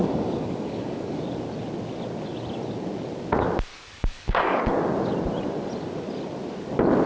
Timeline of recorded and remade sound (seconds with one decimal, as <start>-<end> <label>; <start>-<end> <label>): 0.0-1.2 remade; 1.2-3.7 recorded; 3.7-4.6 remade; 4.6-7.1 recorded